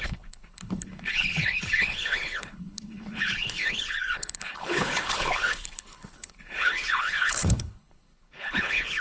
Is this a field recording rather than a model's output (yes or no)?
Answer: no